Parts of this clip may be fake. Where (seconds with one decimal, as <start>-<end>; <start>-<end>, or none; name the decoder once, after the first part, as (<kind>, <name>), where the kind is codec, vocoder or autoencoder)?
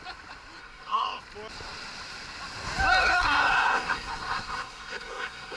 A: 0.6-1.2 (codec, SNAC); 3.0-5.6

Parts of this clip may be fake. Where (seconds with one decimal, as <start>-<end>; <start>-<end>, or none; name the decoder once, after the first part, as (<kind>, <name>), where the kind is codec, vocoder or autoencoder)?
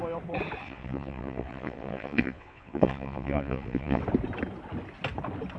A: 0.6-4.0 (vocoder, WaveNeXt)